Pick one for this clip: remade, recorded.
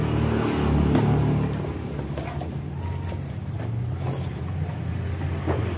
recorded